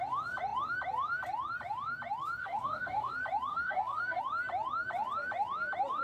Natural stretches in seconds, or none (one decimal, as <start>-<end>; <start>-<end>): 0.0-2.4; 3.1-3.5; 4.2-6.0